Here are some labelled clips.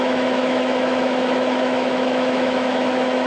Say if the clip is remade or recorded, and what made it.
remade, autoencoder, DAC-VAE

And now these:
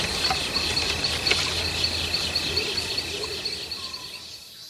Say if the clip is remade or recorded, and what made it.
recorded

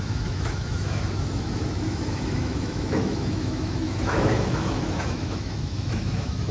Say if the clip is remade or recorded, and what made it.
remade, autoencoder, DAC-VAE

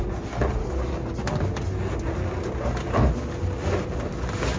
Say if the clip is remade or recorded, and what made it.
recorded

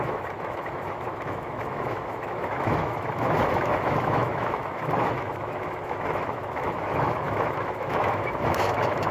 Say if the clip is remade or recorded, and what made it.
remade, autoencoder, DAC-VAE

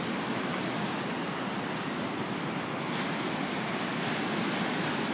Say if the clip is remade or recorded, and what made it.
recorded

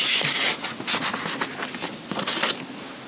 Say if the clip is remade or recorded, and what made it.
recorded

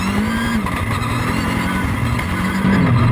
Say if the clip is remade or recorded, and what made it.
recorded